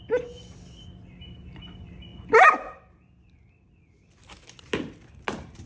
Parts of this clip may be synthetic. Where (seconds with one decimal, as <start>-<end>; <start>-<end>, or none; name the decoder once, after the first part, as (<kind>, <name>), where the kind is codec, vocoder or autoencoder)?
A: none